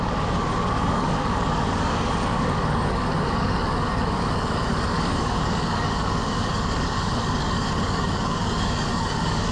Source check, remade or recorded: remade